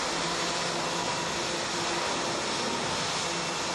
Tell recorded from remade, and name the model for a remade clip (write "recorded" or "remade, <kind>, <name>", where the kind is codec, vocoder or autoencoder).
recorded